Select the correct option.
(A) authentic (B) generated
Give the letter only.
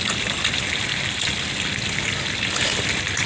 A